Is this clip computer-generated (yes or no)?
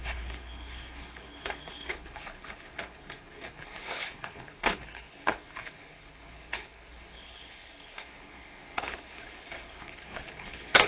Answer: yes